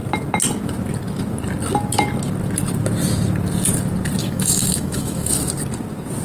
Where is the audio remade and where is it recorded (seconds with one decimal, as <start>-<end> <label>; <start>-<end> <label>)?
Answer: 0.0-4.2 recorded; 4.2-5.3 remade; 5.3-6.2 recorded